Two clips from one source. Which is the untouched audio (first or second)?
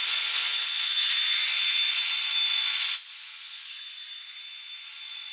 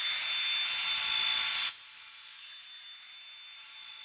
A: second